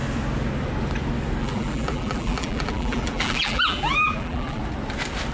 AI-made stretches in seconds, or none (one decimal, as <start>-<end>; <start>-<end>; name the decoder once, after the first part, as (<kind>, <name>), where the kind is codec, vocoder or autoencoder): 1.4-4.6 (vocoder, BigVGAN v2)